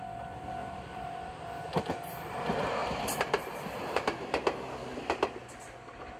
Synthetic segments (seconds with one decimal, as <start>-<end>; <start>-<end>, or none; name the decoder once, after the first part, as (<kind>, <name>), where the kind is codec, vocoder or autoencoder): 0.6-2.4 (vocoder, BigVGAN v2); 2.8-4.0